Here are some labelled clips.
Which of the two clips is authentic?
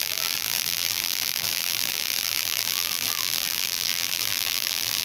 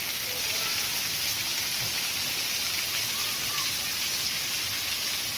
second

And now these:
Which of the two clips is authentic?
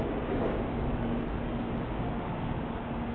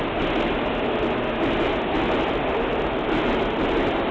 second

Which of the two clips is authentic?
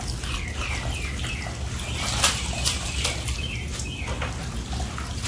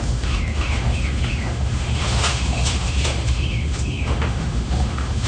first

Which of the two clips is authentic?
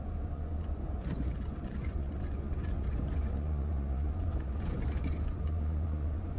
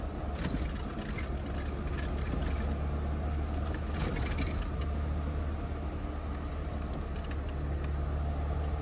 second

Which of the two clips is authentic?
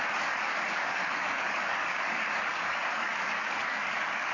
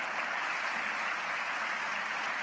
second